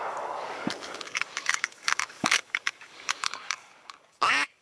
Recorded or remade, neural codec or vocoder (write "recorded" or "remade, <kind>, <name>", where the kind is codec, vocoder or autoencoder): remade, codec, DAC